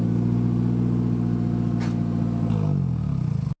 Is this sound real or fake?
real